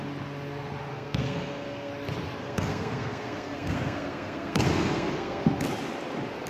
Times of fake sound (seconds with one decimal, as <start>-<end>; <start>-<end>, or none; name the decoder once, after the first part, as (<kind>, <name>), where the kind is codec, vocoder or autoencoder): 0.9-1.9 (codec, SNAC); 2.4-5.4